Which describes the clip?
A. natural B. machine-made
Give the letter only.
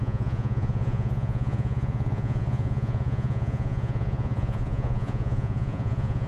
B